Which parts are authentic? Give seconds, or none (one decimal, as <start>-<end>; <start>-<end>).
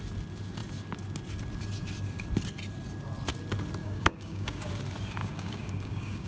0.0-3.8; 4.7-5.2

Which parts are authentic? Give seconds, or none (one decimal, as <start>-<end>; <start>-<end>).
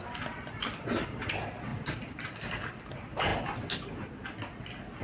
0.0-5.0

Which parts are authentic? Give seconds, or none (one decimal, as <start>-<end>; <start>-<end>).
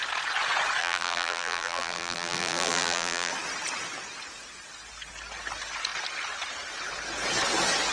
0.0-0.8; 3.3-7.9